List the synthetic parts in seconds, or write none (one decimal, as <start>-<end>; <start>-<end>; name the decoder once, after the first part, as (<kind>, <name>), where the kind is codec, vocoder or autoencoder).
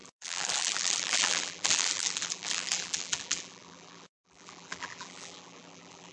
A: 0.0-6.1 (vocoder, BigVGAN v2)